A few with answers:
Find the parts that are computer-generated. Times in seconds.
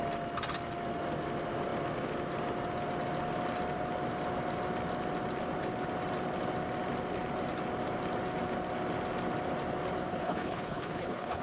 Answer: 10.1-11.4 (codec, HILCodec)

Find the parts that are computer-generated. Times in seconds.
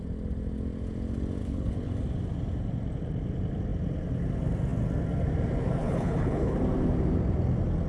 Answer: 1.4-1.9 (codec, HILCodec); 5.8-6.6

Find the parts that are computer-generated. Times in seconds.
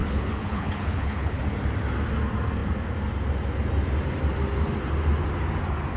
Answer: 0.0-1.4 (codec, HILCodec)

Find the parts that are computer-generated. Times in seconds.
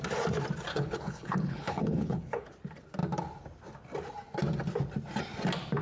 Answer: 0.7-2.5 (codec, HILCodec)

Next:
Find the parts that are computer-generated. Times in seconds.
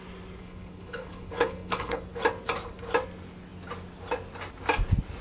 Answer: 0.4-2.0 (codec, HILCodec)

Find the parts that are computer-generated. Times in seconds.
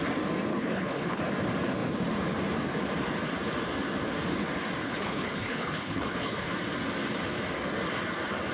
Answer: 0.5-1.2 (codec, HILCodec); 4.8-6.5